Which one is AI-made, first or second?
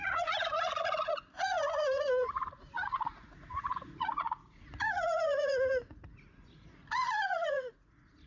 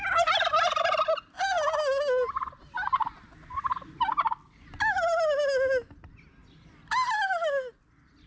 first